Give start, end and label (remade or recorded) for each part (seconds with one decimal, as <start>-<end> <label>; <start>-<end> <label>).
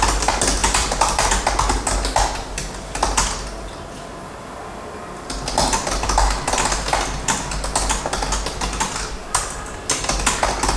0.0-0.6 recorded; 0.6-1.3 remade; 1.3-10.8 recorded